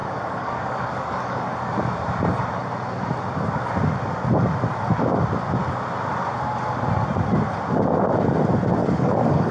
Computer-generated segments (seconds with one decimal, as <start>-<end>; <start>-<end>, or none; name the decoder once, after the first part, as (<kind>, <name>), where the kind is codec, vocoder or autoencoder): 0.0-1.6 (codec, DAC); 8.8-9.5